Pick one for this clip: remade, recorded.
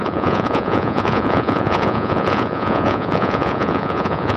remade